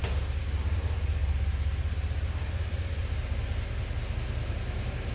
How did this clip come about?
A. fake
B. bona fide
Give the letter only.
B